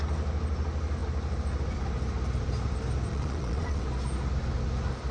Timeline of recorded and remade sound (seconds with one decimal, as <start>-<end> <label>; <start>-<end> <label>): 0.0-3.1 recorded; 3.1-3.8 remade; 3.8-5.1 recorded

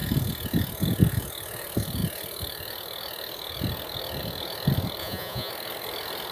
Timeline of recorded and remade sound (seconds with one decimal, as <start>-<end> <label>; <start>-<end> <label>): 0.0-5.0 recorded; 5.0-5.5 remade; 5.5-6.3 recorded

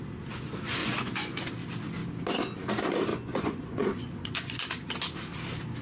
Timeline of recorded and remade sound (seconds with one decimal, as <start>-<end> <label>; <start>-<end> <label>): 0.0-0.8 recorded; 0.8-1.5 remade; 1.5-3.1 recorded; 3.1-4.7 remade; 4.7-5.8 recorded

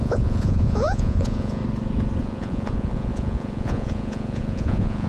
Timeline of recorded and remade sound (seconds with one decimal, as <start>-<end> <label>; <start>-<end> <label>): 0.0-1.6 remade; 1.6-2.2 recorded; 2.2-5.1 remade

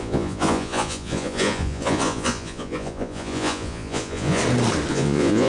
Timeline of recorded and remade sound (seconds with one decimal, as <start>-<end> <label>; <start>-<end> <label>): 0.0-4.4 remade; 4.4-4.9 recorded; 4.9-5.5 remade

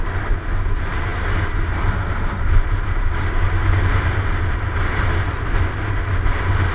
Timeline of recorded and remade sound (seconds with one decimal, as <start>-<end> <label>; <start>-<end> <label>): 0.0-6.7 recorded

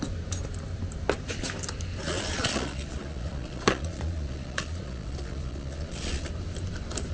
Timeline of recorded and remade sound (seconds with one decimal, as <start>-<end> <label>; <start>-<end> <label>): 0.0-2.0 recorded; 2.0-6.3 remade; 6.3-7.1 recorded